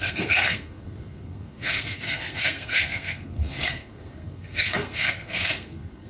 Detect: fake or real fake